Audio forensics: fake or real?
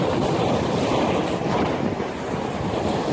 real